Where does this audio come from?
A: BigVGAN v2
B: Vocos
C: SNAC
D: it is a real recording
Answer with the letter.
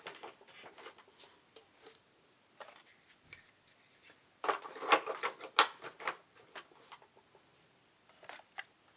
D